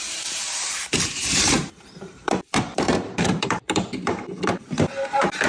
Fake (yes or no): yes